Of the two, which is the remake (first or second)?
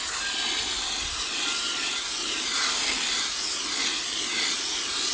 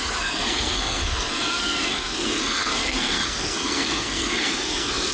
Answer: second